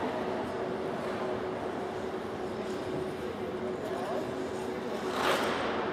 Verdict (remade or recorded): recorded